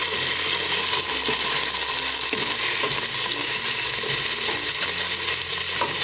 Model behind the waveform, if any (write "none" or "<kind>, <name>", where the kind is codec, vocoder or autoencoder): none